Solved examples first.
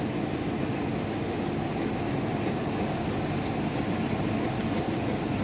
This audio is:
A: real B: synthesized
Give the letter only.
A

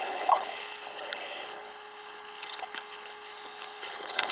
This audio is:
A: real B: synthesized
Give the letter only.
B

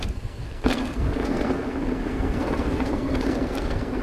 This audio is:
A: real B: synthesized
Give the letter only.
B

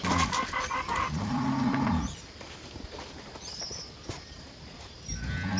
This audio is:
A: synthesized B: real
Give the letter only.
B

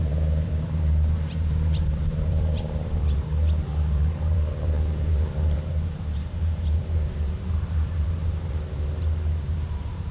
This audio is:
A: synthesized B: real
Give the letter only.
A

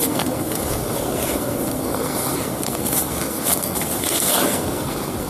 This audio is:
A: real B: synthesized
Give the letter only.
B